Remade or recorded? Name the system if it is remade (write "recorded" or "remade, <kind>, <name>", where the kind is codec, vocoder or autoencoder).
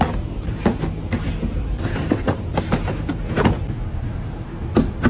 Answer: recorded